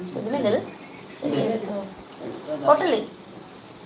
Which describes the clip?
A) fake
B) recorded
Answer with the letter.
B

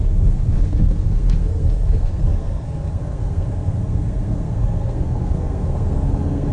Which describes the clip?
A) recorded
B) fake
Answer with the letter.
B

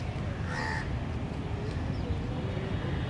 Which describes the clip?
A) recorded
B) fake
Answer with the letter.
A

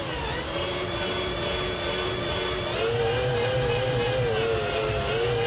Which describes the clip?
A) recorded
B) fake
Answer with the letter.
A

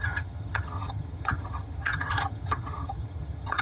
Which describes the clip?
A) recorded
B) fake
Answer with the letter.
B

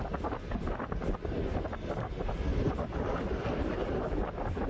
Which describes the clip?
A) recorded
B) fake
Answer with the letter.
A